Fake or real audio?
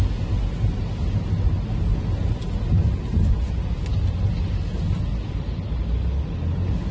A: real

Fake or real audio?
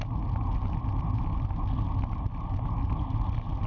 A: real